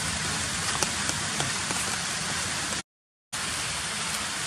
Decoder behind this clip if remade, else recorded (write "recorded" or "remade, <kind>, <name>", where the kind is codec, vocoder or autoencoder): recorded